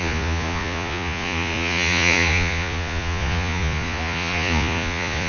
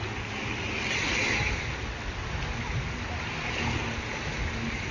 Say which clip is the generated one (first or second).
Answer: first